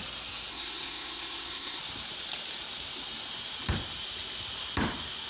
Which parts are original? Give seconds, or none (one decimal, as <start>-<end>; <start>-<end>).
0.0-0.5; 1.8-5.3